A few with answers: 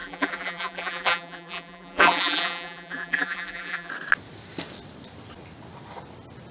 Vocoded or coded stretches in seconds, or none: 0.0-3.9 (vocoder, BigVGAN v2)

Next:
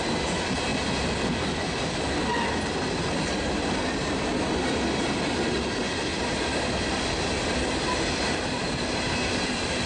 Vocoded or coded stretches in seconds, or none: 6.1-9.9 (vocoder, BigVGAN v2)

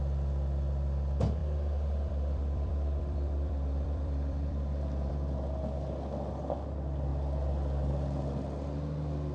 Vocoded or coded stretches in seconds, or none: 1.4-5.1 (vocoder, BigVGAN v2)

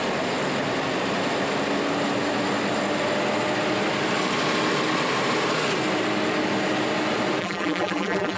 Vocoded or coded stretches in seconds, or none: 7.4-8.4 (vocoder, BigVGAN v2)

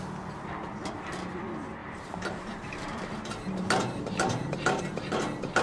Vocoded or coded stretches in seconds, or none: 1.8-4.8 (vocoder, BigVGAN v2)